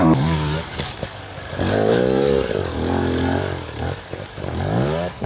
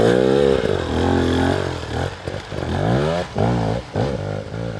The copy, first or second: first